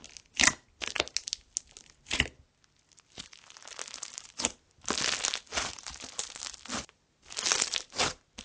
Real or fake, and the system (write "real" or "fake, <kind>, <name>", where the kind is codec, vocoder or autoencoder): real